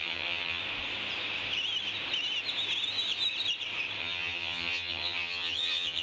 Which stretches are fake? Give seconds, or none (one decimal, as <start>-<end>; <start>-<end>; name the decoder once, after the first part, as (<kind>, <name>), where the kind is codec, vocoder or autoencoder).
0.0-0.6 (vocoder, HiFi-GAN); 4.0-6.0